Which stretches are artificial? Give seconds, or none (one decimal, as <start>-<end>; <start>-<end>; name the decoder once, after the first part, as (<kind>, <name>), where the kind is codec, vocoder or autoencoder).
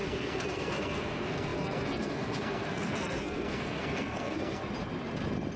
0.0-4.6 (codec, SNAC)